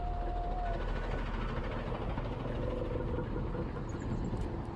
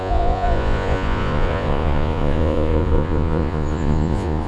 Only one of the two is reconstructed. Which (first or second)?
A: second